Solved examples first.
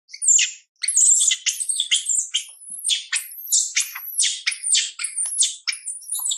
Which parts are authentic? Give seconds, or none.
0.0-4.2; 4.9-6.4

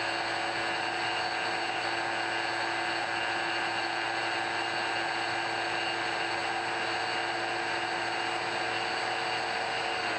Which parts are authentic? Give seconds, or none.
0.0-10.2

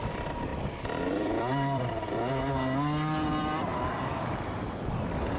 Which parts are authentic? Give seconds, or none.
0.0-0.5; 2.1-3.7; 4.4-5.4

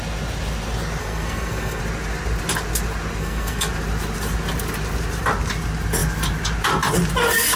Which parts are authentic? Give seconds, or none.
0.0-1.0; 1.8-3.2; 3.7-7.6

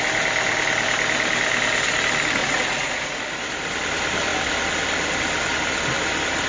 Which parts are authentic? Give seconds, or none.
0.0-2.4; 3.2-6.5

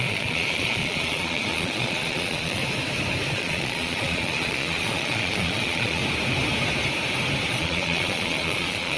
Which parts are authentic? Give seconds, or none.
2.6-3.3; 6.0-7.5

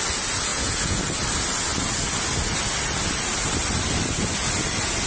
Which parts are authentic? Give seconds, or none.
0.0-0.5; 1.0-5.1

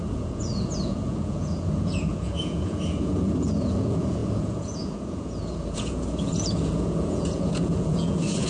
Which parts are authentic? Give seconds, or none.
none